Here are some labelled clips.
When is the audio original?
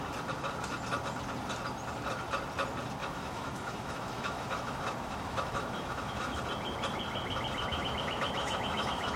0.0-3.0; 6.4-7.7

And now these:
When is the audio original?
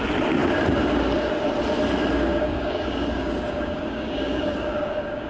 0.0-2.3